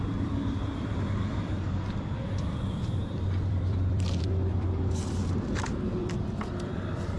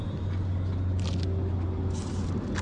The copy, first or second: first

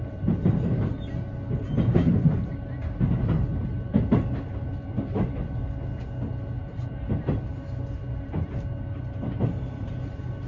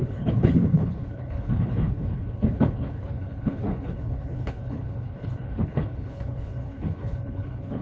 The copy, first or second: second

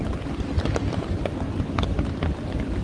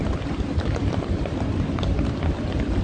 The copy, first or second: second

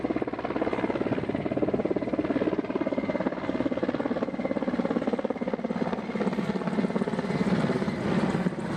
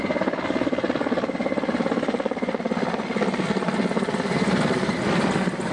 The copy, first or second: second